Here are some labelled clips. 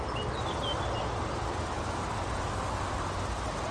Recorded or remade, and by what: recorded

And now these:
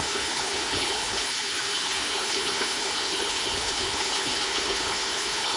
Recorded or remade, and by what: remade, codec, HILCodec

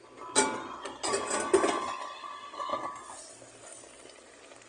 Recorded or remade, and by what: recorded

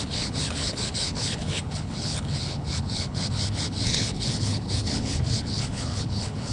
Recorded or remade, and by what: remade, codec, HILCodec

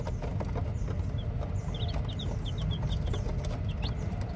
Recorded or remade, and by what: recorded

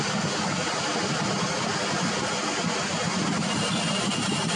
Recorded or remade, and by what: recorded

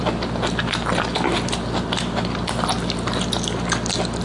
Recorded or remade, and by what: recorded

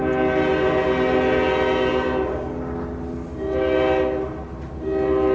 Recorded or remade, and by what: recorded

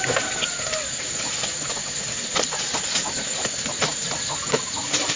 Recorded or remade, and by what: recorded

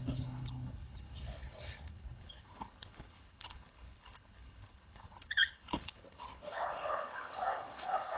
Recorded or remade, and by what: remade, codec, HILCodec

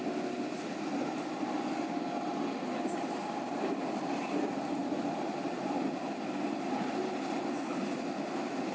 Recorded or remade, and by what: recorded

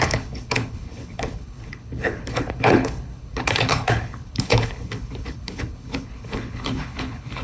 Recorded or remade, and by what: remade, codec, HILCodec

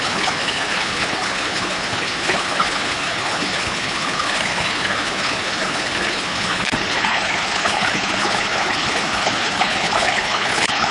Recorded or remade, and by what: remade, codec, HILCodec